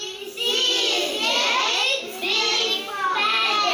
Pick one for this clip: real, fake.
fake